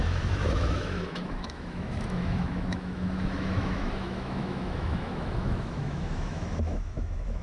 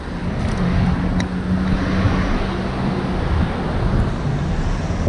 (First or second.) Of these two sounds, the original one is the second